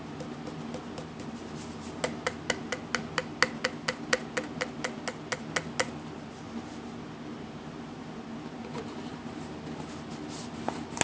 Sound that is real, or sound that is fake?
real